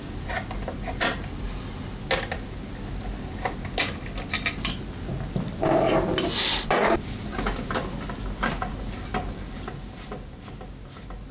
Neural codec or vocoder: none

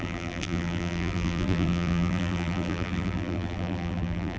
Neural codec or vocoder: vocoder, BigVGAN v2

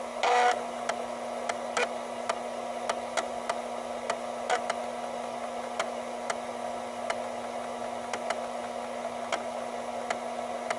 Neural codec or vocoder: none